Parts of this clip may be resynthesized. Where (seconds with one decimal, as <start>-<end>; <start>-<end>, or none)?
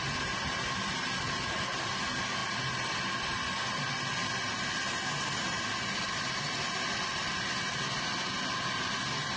none